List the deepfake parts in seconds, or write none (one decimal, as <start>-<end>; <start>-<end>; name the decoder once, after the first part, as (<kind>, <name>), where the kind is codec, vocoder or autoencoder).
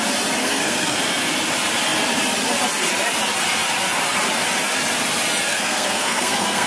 0.4-1.0 (codec, SNAC); 5.5-6.7